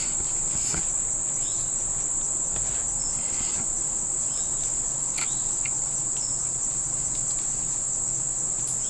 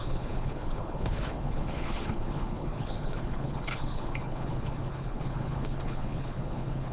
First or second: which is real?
first